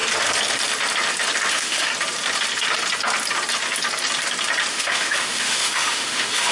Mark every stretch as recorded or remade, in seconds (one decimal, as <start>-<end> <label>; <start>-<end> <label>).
0.0-1.5 recorded; 1.5-1.9 remade; 1.9-4.7 recorded; 4.7-6.5 remade